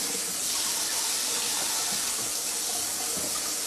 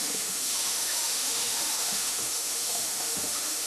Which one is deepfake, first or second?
second